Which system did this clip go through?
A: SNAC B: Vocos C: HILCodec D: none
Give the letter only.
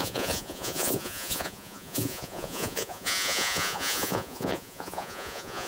B